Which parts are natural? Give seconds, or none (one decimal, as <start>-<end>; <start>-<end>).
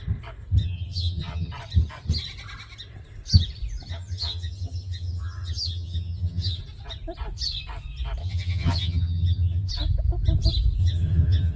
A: 0.0-0.6; 1.5-3.9; 6.6-8.2; 9.7-10.8